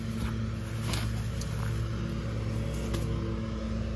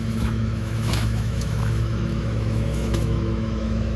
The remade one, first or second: second